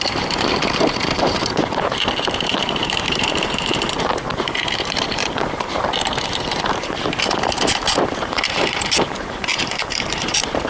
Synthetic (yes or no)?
yes